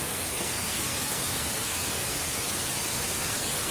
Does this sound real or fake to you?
fake